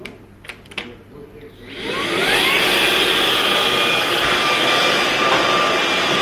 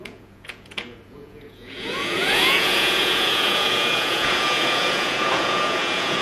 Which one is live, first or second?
first